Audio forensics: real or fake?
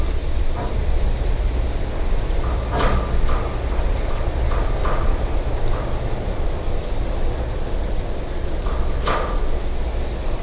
real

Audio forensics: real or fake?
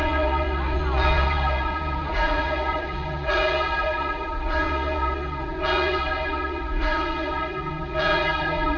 fake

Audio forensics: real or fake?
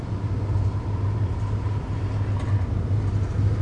real